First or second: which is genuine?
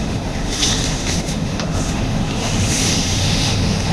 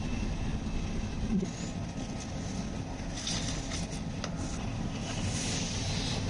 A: second